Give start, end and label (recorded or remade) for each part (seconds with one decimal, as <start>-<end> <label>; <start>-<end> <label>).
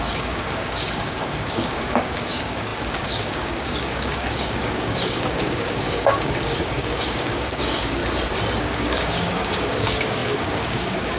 0.0-8.0 remade; 8.0-8.6 recorded; 8.6-11.2 remade